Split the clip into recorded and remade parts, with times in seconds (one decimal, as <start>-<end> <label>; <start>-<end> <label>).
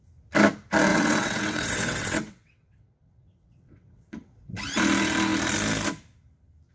0.0-0.9 recorded; 0.9-4.5 remade; 4.5-6.7 recorded